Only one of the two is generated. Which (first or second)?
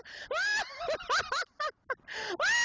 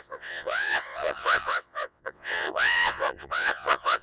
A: second